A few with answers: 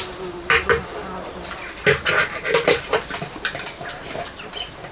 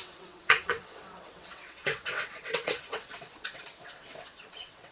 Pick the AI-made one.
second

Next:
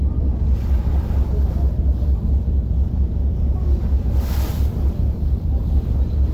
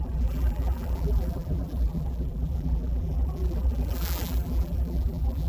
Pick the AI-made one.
second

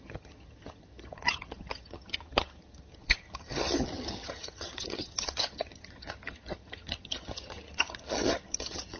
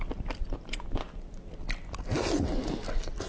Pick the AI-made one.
first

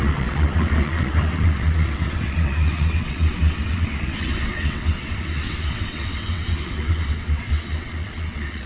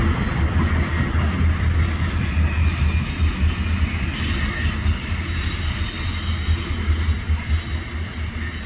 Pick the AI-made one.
first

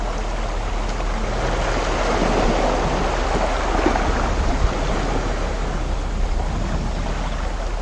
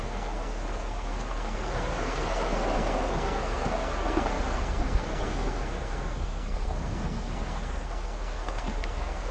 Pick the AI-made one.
second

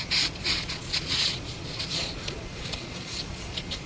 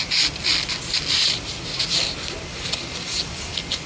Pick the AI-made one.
first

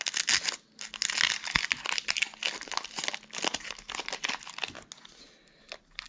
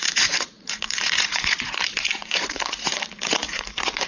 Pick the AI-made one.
second